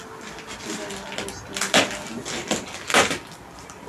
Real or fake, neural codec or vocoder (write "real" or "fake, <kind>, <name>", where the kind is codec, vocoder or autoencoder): real